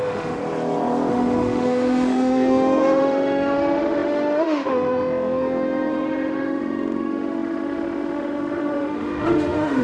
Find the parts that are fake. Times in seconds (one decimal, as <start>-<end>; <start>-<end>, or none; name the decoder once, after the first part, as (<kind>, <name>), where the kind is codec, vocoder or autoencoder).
0.0-0.4 (autoencoder, DAC-VAE); 1.1-9.8